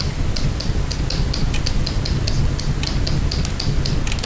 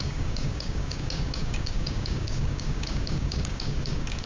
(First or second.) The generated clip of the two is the second